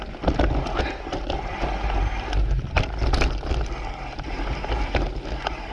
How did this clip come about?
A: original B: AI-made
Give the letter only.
A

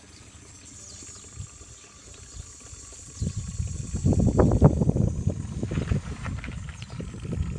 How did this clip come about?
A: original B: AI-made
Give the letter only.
A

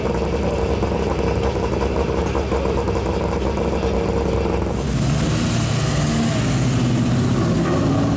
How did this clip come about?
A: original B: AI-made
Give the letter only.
A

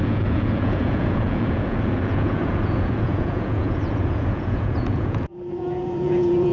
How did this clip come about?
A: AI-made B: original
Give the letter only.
A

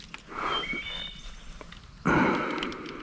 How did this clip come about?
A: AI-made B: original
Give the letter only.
B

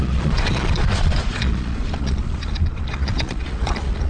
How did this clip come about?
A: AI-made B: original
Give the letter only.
A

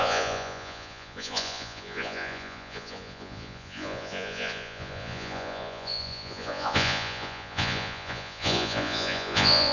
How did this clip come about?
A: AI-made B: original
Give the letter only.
A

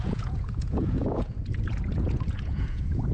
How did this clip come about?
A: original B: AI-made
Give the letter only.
B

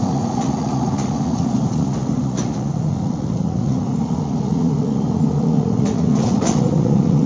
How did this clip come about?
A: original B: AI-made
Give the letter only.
B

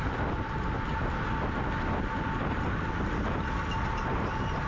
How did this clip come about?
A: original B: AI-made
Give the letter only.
A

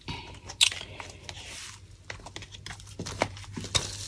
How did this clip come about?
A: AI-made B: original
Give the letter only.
B